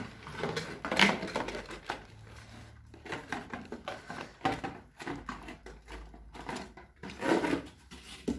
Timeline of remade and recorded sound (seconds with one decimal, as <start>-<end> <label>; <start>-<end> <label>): 0.0-8.4 recorded